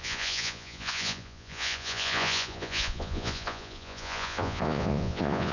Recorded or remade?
remade